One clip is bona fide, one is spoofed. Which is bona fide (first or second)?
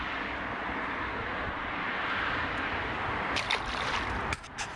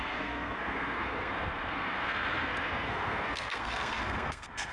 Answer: first